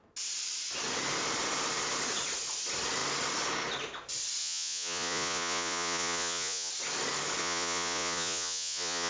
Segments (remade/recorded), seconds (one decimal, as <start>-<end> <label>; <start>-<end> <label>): 0.0-4.4 recorded; 4.4-6.7 remade; 6.7-7.4 recorded; 7.4-9.1 remade